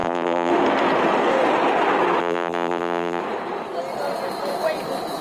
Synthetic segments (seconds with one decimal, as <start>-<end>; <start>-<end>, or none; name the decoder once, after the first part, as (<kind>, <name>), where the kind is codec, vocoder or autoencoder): 0.0-0.5 (vocoder, BigVGAN v2); 2.2-3.2